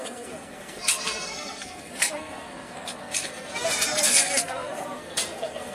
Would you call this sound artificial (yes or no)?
yes